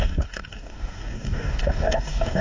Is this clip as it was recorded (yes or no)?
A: no